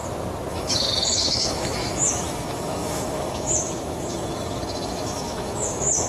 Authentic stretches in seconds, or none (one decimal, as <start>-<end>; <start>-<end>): 0.0-0.5